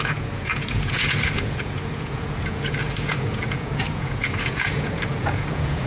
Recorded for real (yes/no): no